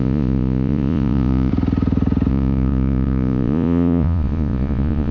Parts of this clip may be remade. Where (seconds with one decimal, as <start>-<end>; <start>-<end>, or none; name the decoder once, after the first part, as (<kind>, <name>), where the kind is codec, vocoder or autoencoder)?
0.0-1.5 (vocoder, Vocos); 2.3-5.1